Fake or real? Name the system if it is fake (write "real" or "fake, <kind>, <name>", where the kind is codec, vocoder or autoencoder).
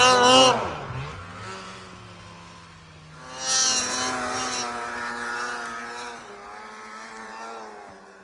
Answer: real